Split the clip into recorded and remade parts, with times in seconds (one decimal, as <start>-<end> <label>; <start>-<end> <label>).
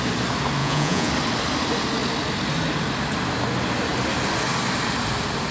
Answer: 0.0-0.6 recorded; 0.6-1.1 remade; 1.1-5.5 recorded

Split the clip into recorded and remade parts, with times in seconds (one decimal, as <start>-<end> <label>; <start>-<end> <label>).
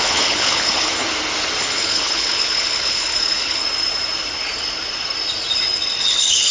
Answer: 0.0-0.9 remade; 0.9-1.6 recorded; 1.6-3.6 remade; 3.6-6.0 recorded; 6.0-6.5 remade